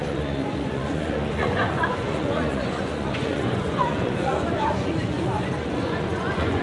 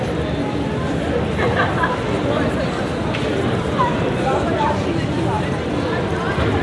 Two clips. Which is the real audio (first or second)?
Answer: second